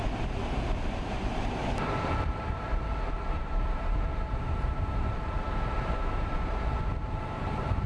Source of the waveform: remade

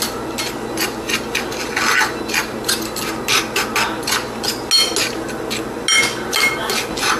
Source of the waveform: recorded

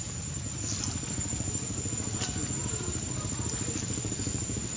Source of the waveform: remade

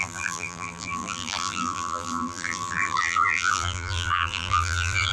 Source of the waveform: remade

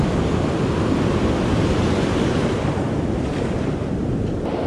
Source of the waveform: recorded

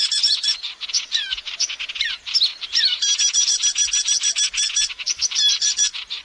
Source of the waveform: remade